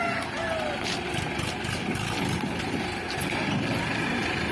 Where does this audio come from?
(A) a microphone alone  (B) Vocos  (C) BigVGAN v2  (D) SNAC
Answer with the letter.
A